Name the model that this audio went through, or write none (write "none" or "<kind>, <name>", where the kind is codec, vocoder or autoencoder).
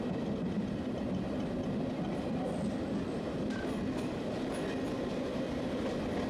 none